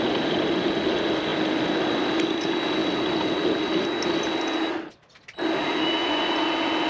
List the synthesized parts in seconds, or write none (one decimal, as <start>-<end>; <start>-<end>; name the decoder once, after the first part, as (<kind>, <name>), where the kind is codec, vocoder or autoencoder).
6.0-6.5 (vocoder, Vocos)